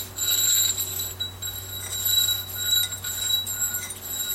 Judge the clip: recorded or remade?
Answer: recorded